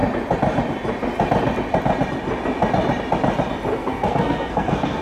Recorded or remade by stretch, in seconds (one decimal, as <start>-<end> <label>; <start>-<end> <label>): 0.0-3.7 recorded; 3.7-5.0 remade